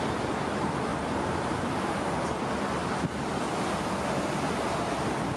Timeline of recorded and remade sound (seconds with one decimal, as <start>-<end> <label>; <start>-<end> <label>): 0.0-5.4 recorded